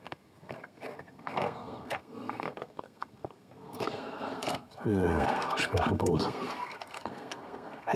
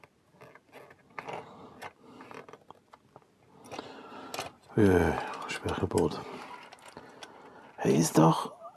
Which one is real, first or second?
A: second